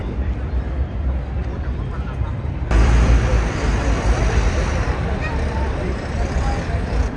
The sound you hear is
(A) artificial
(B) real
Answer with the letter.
A